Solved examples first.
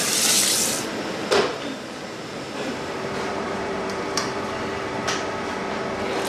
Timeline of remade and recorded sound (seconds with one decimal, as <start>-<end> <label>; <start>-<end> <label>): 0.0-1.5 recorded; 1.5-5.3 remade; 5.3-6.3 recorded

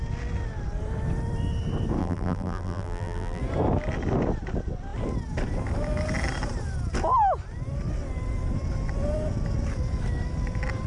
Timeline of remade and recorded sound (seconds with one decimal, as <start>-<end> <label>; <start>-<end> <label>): 0.0-2.0 recorded; 2.0-3.4 remade; 3.4-10.9 recorded

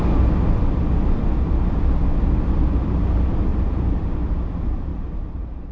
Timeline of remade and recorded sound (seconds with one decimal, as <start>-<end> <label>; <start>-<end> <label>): 0.0-3.5 recorded; 3.5-4.1 remade; 4.1-4.9 recorded; 4.9-5.7 remade